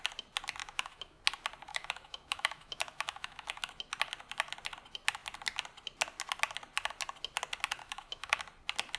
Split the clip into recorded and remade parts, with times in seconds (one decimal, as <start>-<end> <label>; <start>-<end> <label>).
0.0-0.6 recorded; 0.6-1.2 remade; 1.2-1.7 recorded; 1.7-3.7 remade; 3.7-7.8 recorded; 7.8-8.4 remade; 8.4-9.0 recorded